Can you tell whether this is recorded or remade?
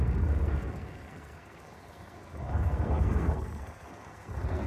remade